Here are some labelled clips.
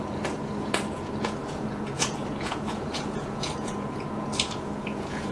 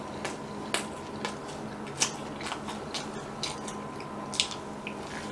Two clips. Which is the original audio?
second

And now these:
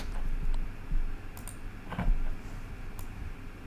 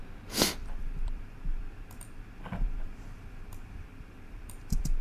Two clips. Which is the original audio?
first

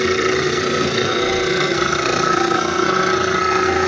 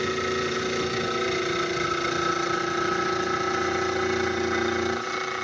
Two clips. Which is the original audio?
second